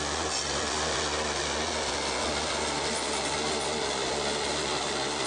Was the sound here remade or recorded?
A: remade